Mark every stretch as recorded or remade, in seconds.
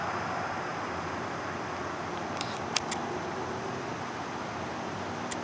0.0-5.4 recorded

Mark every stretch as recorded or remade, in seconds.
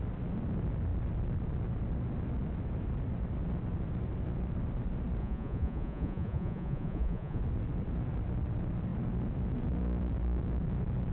0.0-5.2 recorded; 5.2-7.4 remade; 7.4-11.1 recorded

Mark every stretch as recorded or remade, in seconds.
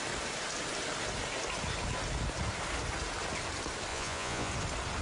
0.0-3.9 recorded; 3.9-4.5 remade; 4.5-5.0 recorded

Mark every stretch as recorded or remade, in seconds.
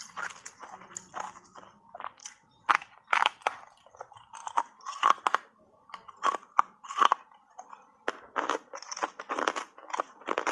0.0-10.5 recorded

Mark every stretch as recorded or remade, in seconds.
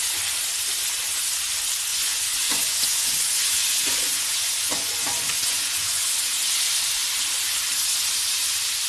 0.0-1.9 recorded; 1.9-6.1 remade; 6.1-8.9 recorded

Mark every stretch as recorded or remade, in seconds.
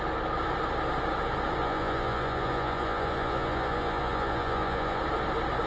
0.0-1.6 recorded; 1.6-5.0 remade; 5.0-5.7 recorded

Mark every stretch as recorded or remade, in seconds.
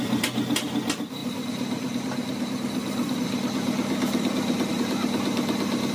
0.0-5.9 recorded